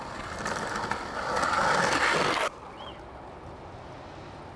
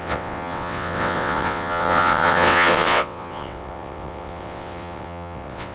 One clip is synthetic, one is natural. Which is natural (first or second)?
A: first